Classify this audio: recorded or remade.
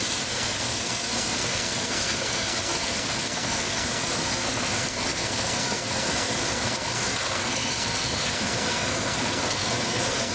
remade